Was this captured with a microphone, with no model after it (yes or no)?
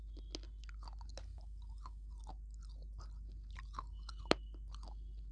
yes